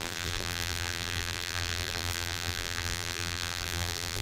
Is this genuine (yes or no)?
no